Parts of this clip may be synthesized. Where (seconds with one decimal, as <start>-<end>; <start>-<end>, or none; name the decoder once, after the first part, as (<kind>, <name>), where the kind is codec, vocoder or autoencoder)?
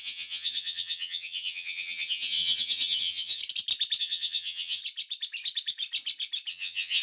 0.0-3.4 (vocoder, HiFi-GAN); 4.0-4.8; 6.5-7.0